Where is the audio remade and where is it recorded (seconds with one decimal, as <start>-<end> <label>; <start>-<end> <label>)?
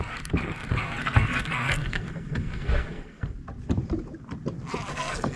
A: 0.0-3.4 remade; 3.4-4.9 recorded; 4.9-5.4 remade